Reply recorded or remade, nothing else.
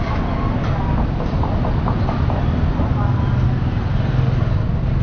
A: recorded